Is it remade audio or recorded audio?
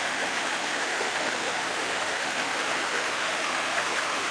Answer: remade